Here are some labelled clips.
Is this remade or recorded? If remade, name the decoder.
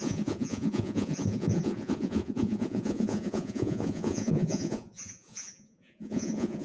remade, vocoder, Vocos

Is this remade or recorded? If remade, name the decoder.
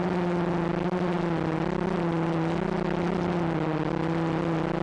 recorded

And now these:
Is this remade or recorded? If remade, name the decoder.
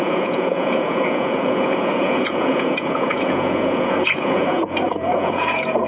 remade, vocoder, Vocos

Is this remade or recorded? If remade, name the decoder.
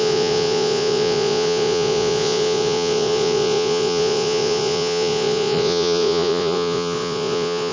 remade, vocoder, Vocos